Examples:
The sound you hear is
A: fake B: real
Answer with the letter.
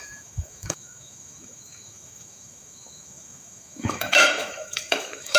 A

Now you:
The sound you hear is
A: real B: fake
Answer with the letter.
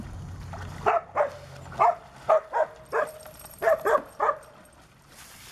A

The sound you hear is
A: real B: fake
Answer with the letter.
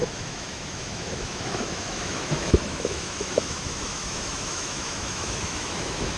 B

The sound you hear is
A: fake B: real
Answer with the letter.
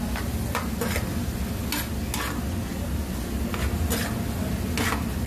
B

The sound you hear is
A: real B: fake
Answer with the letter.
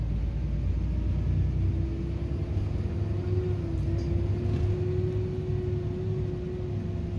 A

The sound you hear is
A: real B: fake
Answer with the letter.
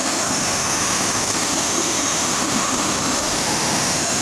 B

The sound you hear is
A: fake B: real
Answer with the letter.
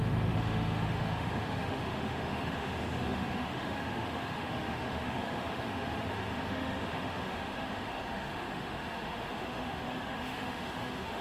A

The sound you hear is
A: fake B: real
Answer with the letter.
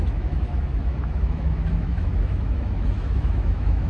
A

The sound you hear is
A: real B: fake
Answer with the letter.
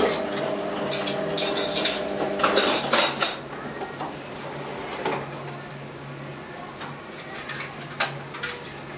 A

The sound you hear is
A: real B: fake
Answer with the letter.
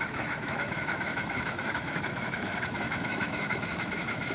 B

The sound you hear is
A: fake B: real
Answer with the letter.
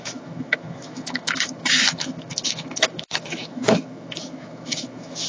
A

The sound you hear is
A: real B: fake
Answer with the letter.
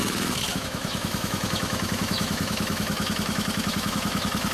B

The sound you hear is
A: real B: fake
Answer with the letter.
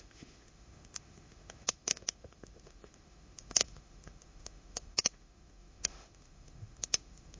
B